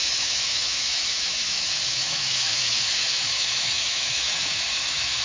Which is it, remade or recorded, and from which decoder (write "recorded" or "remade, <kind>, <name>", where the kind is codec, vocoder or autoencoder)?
remade, autoencoder, DAC-VAE